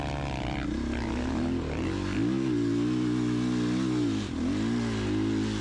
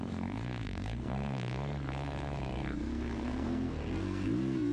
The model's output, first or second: second